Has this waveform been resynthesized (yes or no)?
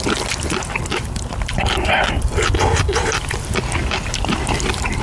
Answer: no